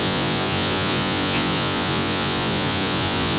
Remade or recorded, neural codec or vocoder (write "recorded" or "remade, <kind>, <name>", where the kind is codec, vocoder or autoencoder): remade, vocoder, Vocos